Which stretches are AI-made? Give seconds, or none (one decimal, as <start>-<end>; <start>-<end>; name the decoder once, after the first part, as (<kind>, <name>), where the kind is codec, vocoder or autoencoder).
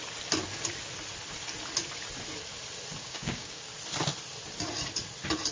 3.0-3.7 (codec, DAC)